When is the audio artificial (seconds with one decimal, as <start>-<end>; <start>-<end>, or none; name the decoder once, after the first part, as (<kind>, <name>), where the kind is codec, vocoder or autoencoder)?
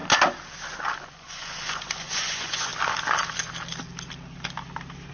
1.0-2.7 (vocoder, Vocos)